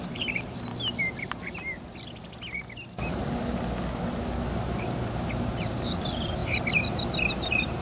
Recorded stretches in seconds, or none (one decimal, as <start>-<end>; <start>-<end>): 0.7-1.2; 1.6-4.6; 6.4-7.3